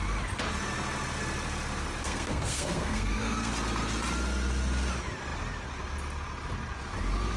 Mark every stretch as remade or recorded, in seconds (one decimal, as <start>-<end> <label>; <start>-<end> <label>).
0.0-2.0 recorded; 2.0-3.5 remade; 3.5-7.4 recorded